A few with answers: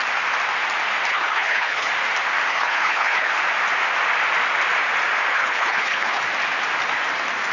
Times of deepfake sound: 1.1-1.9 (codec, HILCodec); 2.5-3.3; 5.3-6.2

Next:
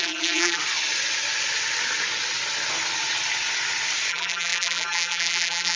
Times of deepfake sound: 0.0-0.6 (vocoder, BigVGAN v2); 4.1-5.8

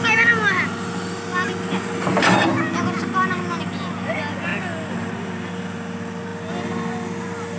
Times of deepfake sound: none

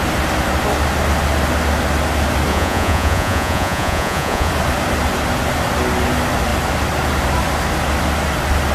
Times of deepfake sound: 2.5-4.5 (vocoder, Vocos)

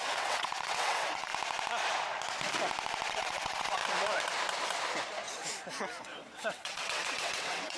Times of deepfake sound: 0.0-1.3 (vocoder, WaveNeXt); 3.1-3.8; 6.0-7.8

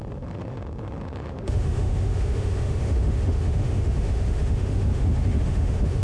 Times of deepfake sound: 0.0-6.0 (autoencoder, DAC-VAE)